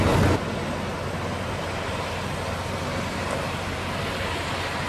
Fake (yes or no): no